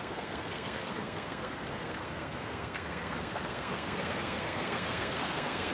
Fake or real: fake